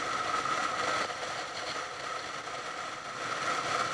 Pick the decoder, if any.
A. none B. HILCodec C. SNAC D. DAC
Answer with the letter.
A